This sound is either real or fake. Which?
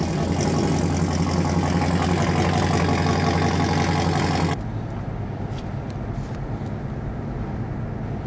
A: real